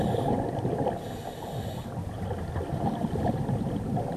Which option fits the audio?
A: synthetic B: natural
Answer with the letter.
B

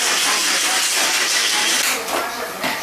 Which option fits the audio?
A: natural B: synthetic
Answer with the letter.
A